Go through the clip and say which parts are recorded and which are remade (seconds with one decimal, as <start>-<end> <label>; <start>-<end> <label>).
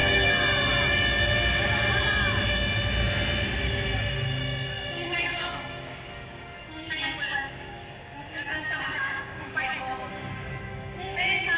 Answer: 0.0-5.1 recorded; 5.1-9.7 remade; 9.7-10.1 recorded; 10.1-11.6 remade